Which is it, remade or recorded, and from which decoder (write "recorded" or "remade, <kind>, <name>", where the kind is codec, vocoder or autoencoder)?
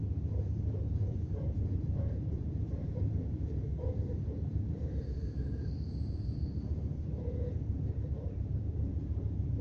remade, vocoder, BigVGAN v2